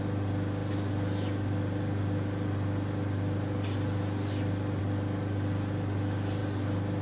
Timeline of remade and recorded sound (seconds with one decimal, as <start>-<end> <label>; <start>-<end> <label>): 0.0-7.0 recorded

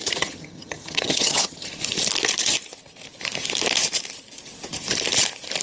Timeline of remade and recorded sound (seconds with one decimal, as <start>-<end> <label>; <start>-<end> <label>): 0.0-1.7 remade; 1.7-5.6 recorded

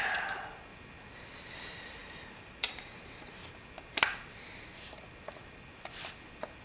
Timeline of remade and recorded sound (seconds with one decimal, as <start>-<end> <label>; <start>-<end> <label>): 0.0-2.0 recorded; 2.0-3.6 remade; 3.6-6.6 recorded